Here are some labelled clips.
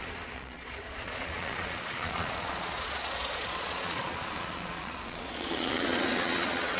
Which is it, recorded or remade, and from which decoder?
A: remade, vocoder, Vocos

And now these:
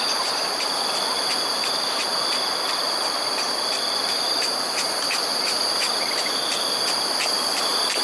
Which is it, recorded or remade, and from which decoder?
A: remade, vocoder, BigVGAN v2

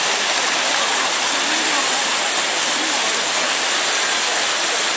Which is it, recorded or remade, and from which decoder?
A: recorded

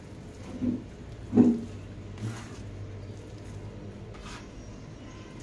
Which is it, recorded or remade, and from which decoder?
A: recorded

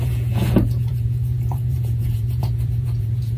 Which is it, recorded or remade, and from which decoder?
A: remade, vocoder, Vocos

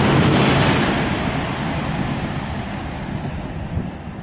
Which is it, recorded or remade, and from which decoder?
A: recorded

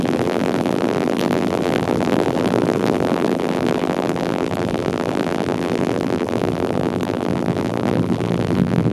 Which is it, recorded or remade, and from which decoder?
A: remade, vocoder, BigVGAN v2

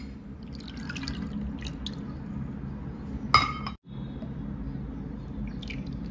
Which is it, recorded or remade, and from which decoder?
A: recorded